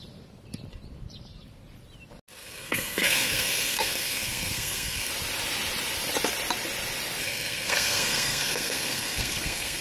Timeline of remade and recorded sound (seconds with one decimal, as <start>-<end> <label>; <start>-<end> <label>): 0.0-2.4 recorded; 2.4-5.1 remade; 5.1-7.2 recorded; 7.2-9.8 remade